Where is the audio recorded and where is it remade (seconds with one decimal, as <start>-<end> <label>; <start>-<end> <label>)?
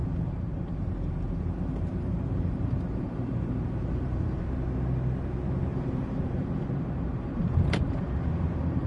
0.0-4.4 remade; 4.4-5.7 recorded; 5.7-8.9 remade